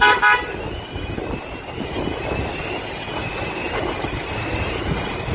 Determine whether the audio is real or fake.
real